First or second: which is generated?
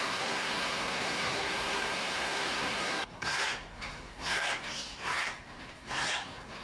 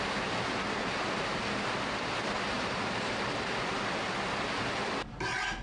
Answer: first